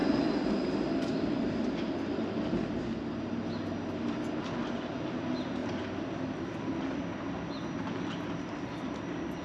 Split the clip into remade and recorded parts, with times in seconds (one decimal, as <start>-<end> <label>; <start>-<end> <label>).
0.0-5.6 recorded; 5.6-7.2 remade; 7.2-9.4 recorded